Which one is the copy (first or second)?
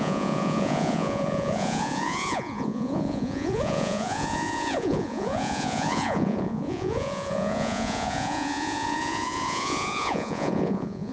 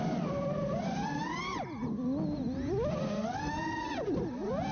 first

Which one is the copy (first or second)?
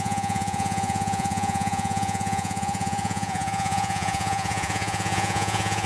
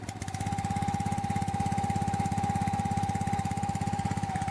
first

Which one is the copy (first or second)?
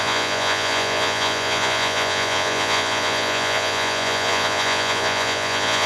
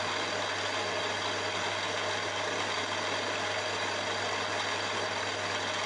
first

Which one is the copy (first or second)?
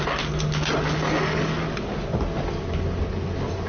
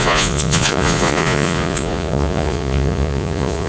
second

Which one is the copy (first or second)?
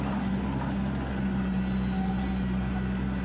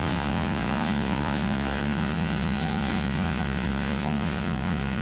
second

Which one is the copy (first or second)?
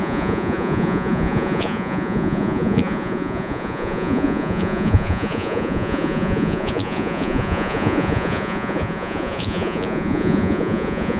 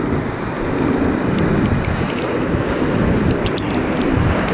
first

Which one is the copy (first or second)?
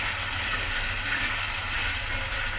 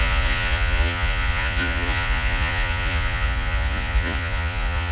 second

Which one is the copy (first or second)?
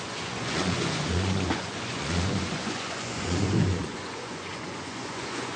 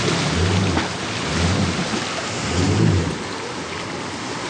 first